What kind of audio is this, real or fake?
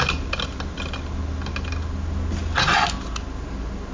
real